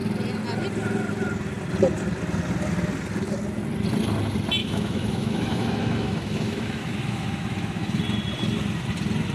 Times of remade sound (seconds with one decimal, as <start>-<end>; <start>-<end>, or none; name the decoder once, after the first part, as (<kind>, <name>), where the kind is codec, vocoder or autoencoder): 4.6-8.0 (autoencoder, DAC-VAE)